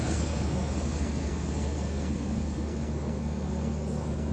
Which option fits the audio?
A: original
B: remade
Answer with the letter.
B